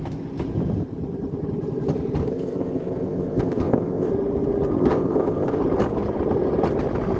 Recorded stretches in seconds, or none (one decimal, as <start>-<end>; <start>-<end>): 0.0-2.2; 4.1-4.8; 5.6-7.2